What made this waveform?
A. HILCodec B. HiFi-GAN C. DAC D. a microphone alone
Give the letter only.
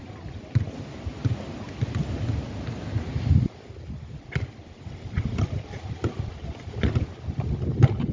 D